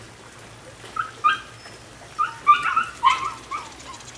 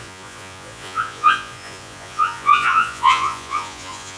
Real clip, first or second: first